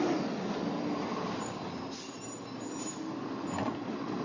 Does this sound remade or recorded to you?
recorded